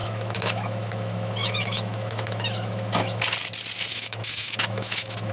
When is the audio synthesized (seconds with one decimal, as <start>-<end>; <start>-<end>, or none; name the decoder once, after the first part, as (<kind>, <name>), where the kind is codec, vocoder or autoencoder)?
0.0-3.2 (autoencoder, DAC-VAE); 3.9-5.3